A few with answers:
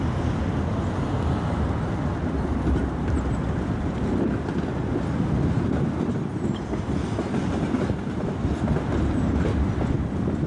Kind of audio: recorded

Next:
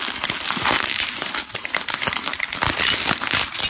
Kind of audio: recorded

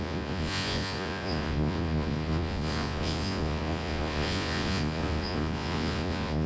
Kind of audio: remade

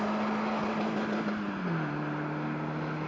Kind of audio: recorded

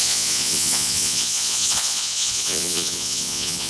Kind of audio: remade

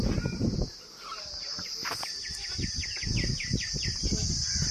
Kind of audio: recorded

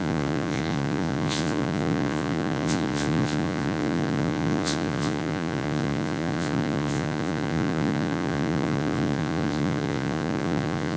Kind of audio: remade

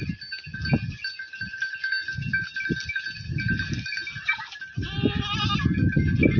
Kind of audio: recorded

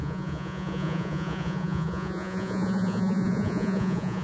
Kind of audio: remade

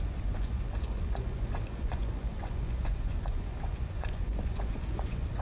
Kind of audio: remade